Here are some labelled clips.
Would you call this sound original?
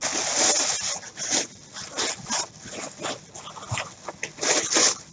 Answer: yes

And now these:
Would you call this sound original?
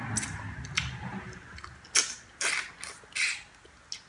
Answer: yes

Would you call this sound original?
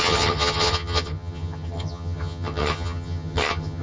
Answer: no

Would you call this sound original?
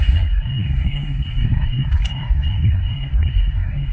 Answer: no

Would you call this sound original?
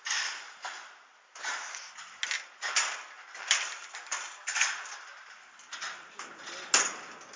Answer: yes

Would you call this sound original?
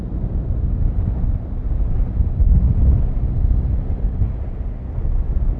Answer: yes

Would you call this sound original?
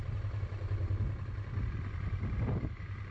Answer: yes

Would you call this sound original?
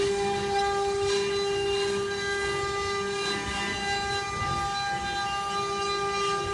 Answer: yes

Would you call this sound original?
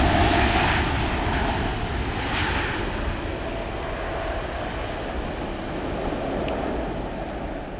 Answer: yes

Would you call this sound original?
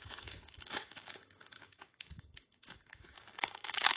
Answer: no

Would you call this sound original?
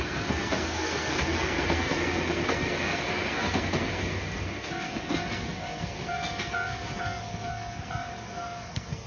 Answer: no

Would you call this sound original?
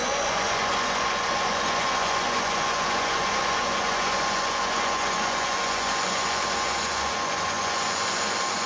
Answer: no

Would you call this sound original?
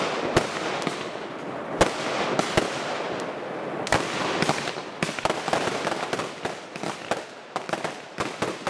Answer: yes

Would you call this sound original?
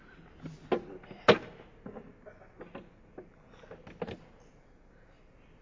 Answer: yes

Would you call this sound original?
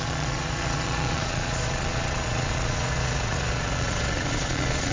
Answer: no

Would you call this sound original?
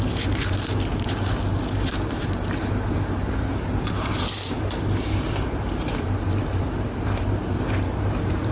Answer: no